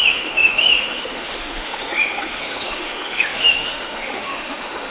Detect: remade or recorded remade